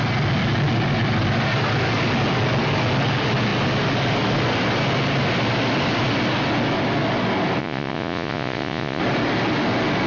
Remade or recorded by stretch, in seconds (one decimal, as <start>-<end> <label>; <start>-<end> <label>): 0.0-7.6 recorded; 7.6-9.0 remade; 9.0-10.1 recorded